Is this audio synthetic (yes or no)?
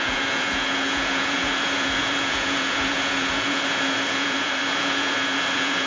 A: yes